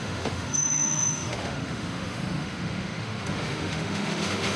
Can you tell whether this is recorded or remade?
remade